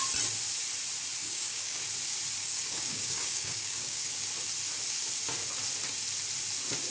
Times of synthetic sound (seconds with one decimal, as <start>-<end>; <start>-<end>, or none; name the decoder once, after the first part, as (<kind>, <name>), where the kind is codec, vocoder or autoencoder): 1.2-1.8 (codec, DAC); 2.4-4.1